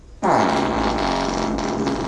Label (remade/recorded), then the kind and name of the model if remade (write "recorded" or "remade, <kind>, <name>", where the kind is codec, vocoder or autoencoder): recorded